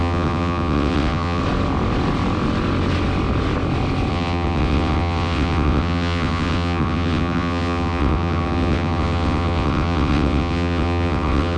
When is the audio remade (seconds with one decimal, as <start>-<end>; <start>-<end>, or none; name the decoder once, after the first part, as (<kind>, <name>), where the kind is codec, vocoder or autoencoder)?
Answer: 0.0-1.4 (vocoder, WaveNeXt); 4.1-11.6